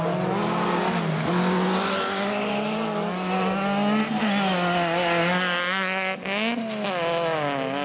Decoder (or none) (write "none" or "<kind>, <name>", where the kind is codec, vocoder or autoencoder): none